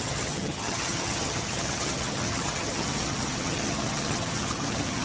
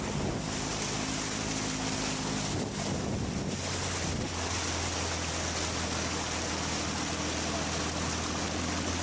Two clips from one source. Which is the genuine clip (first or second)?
second